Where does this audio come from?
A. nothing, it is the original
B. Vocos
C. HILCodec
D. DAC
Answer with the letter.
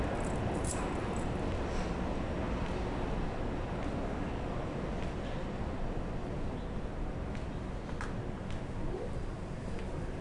A